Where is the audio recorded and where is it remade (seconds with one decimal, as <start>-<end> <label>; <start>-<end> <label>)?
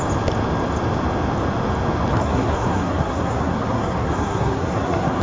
0.0-2.1 recorded; 2.1-5.2 remade